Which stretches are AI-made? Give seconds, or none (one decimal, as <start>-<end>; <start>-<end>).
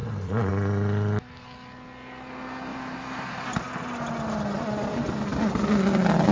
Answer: 0.0-0.5; 2.7-3.6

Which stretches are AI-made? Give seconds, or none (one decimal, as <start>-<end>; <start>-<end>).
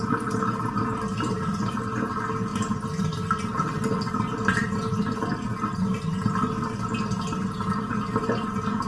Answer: none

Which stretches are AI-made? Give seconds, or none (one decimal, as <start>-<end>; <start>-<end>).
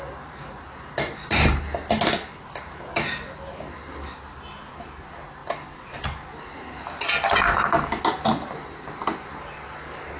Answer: none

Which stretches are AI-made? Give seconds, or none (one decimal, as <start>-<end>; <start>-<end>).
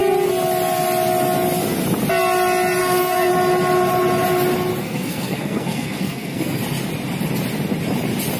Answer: 2.8-3.3; 4.8-6.6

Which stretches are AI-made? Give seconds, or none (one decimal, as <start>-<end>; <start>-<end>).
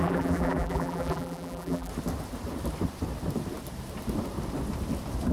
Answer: 0.0-1.9